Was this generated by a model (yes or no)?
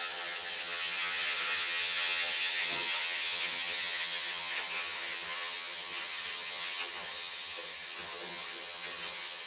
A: yes